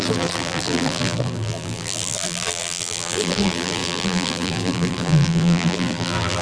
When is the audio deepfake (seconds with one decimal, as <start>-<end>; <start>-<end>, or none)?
0.0-6.4